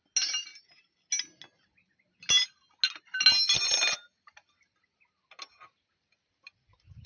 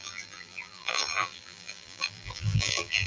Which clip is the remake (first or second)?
second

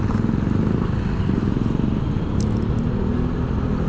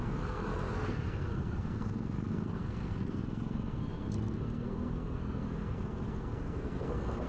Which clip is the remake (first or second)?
second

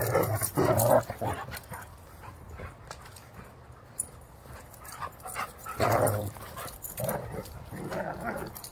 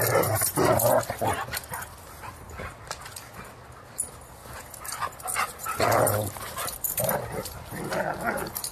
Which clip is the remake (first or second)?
first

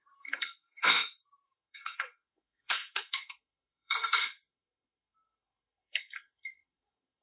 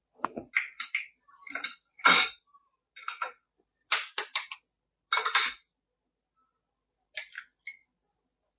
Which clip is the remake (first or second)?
first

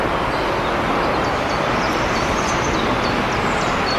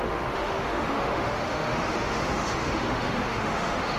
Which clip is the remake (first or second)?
second